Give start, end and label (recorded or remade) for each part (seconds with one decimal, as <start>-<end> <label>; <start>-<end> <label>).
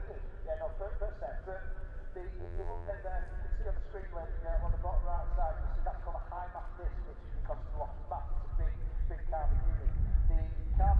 0.0-2.4 recorded; 2.4-2.9 remade; 2.9-11.0 recorded